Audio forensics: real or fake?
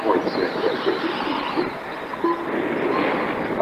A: real